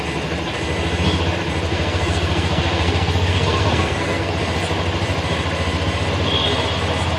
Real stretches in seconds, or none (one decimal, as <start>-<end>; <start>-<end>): 0.0-1.7; 4.3-7.2